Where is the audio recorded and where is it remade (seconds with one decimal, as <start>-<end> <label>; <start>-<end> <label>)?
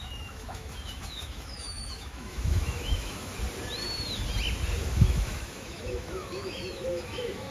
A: 0.0-3.3 remade; 3.3-4.8 recorded; 4.8-7.5 remade